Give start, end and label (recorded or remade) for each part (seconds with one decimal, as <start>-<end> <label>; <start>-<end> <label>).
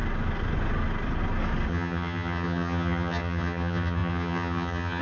0.0-1.7 recorded; 1.7-5.0 remade